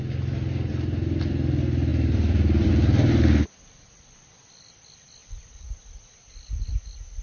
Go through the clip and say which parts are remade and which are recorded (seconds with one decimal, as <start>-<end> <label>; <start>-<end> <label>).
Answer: 0.0-1.9 recorded; 1.9-2.7 remade; 2.7-5.2 recorded; 5.2-5.9 remade; 5.9-7.2 recorded